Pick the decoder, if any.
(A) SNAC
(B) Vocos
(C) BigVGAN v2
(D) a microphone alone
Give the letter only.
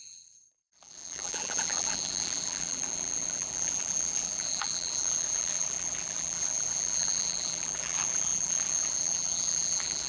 C